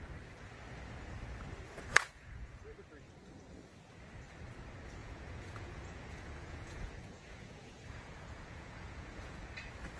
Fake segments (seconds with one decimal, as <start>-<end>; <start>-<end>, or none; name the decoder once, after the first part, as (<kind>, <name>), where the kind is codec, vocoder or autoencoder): 1.9-2.6 (vocoder, Vocos); 5.0-9.4